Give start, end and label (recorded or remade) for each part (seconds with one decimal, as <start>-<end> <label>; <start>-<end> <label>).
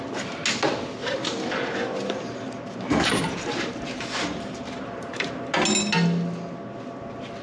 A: 0.0-1.0 recorded; 1.0-5.4 remade; 5.4-7.4 recorded